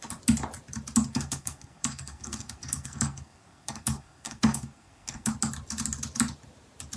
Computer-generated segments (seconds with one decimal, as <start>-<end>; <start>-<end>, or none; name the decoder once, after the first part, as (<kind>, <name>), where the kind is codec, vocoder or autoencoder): 1.1-5.3 (codec, SNAC)